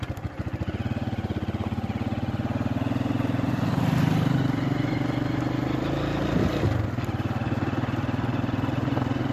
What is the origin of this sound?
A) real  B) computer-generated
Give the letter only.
A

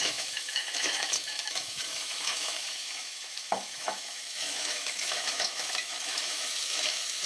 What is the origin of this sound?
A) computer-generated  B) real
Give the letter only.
A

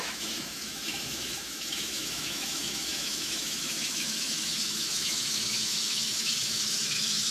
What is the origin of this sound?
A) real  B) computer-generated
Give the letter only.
B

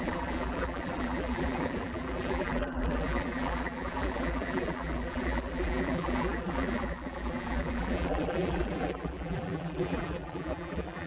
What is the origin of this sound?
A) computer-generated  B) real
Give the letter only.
A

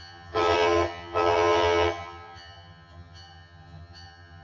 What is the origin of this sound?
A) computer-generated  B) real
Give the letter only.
A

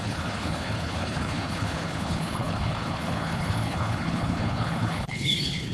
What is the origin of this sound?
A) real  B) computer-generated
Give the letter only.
B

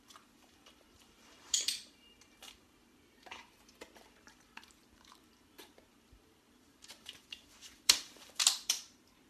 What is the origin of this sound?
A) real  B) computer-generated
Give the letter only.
B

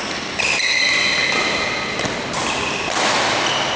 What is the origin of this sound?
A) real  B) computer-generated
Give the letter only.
A